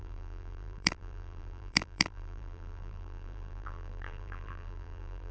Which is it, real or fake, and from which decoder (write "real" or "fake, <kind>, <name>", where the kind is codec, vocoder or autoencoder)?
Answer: fake, vocoder, BigVGAN v2